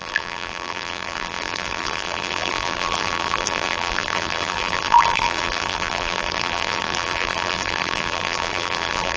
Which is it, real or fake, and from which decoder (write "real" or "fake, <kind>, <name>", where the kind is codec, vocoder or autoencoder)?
fake, vocoder, BigVGAN v2